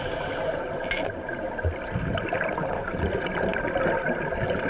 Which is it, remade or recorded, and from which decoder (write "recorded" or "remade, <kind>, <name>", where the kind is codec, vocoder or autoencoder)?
recorded